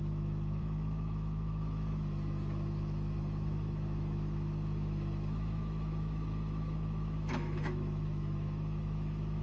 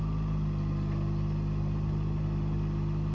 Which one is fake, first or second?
first